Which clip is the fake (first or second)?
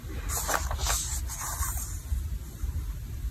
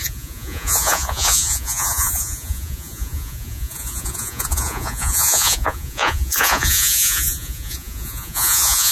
second